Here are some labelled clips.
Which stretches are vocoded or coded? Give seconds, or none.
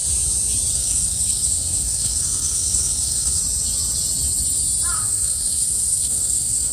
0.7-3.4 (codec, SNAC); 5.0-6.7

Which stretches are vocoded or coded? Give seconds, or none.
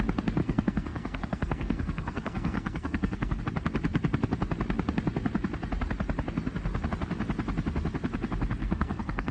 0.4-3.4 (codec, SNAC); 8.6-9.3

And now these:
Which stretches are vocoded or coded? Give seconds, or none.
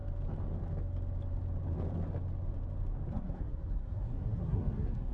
3.1-5.1 (codec, SNAC)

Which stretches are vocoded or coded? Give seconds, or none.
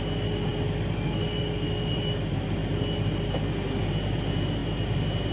none